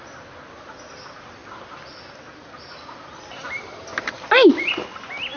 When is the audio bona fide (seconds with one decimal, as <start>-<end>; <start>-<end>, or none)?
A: 0.0-5.4